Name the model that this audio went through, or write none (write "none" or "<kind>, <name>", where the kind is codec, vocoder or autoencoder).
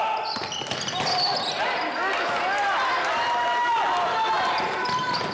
none